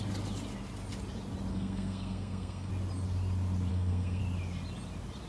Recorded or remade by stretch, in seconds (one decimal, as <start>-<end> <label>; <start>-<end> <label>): 0.0-1.5 recorded; 1.5-2.7 remade; 2.7-3.7 recorded; 3.7-4.2 remade; 4.2-5.3 recorded